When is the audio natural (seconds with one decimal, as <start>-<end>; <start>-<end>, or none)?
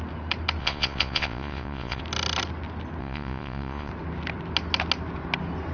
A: 0.0-0.6; 2.0-3.0; 3.9-5.7